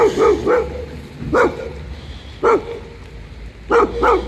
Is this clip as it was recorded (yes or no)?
yes